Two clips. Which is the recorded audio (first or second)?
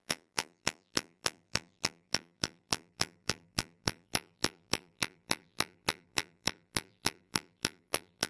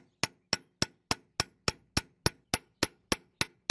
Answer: second